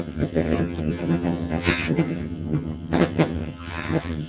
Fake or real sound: fake